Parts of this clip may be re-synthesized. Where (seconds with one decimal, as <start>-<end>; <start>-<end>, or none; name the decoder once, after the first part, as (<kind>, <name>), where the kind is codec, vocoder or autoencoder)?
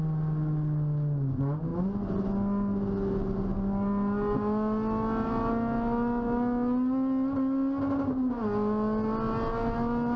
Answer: none